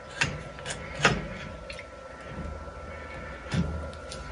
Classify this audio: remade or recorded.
recorded